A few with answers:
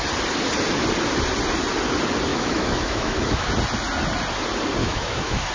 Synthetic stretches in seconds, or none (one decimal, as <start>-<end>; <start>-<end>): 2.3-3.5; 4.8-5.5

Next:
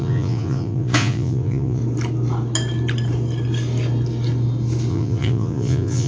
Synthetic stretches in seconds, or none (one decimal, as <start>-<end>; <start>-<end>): 0.0-1.8; 4.9-6.1

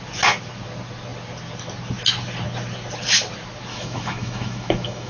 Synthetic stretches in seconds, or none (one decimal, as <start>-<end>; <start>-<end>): 3.7-5.1